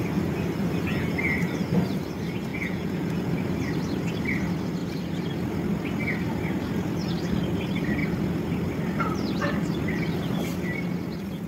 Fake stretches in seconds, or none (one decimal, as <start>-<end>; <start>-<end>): 2.5-3.3